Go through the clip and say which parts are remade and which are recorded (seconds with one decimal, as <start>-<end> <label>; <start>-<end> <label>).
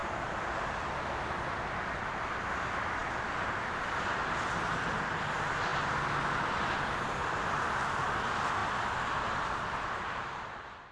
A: 0.0-10.9 recorded